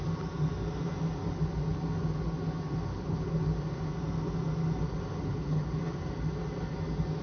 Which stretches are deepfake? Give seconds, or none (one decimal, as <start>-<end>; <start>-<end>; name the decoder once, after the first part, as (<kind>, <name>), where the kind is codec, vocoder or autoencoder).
2.9-3.4 (codec, HILCodec); 5.1-5.8